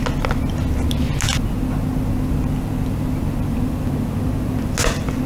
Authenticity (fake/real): real